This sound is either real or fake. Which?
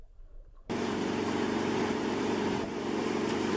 fake